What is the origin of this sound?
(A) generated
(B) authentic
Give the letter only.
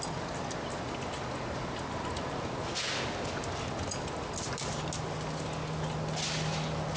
B